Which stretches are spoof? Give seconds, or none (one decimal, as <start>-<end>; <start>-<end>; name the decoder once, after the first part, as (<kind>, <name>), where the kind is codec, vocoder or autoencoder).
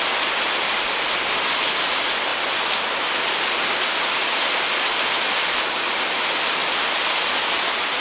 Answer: none